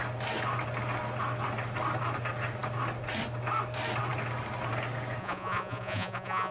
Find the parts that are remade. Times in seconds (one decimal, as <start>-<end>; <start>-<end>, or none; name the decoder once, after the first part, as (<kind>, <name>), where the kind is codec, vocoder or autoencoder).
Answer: 5.2-6.5 (vocoder, Vocos)